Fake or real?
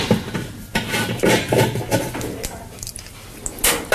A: real